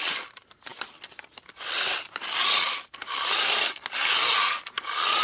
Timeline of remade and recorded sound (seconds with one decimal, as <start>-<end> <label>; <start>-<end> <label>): 0.0-0.7 recorded; 0.7-3.8 remade; 3.8-5.2 recorded